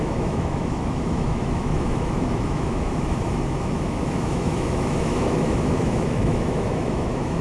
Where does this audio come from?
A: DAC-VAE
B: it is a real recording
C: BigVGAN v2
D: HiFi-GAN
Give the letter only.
A